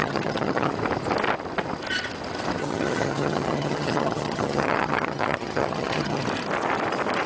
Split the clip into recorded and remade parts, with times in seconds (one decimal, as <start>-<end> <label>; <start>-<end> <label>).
0.0-0.7 remade; 0.7-2.6 recorded; 2.6-6.2 remade; 6.2-7.3 recorded